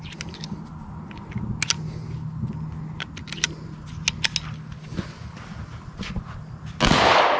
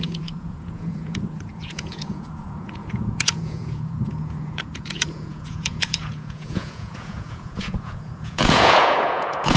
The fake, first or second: second